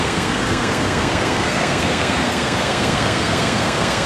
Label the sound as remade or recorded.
remade